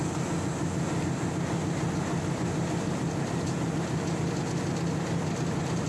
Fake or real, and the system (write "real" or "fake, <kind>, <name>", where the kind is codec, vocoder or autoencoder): real